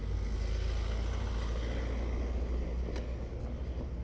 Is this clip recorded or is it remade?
recorded